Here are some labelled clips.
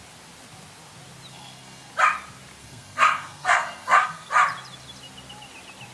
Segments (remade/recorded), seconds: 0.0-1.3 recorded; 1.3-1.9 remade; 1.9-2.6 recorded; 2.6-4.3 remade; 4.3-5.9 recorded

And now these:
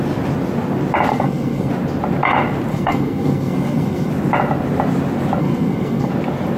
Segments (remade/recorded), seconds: 0.0-1.1 recorded; 1.1-1.7 remade; 1.7-2.7 recorded; 2.7-4.1 remade; 4.1-5.4 recorded; 5.4-6.1 remade; 6.1-6.6 recorded

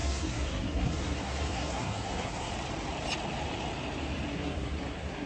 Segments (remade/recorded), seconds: 0.0-2.5 remade; 2.5-4.3 recorded; 4.3-5.3 remade

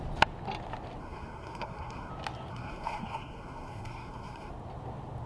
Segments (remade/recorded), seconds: 0.0-1.0 recorded; 1.0-2.1 remade; 2.1-2.5 recorded; 2.5-4.5 remade; 4.5-5.3 recorded

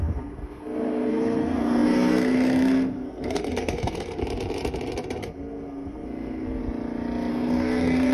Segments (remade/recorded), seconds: 0.0-4.2 remade; 4.2-5.2 recorded; 5.2-6.6 remade; 6.6-7.3 recorded; 7.3-8.1 remade

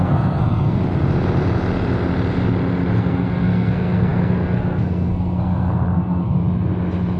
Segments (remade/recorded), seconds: 0.0-0.8 remade; 0.8-3.0 recorded; 3.0-6.4 remade; 6.4-7.2 recorded